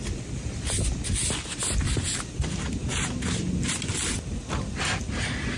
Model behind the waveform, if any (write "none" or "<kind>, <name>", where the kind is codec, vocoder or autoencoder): none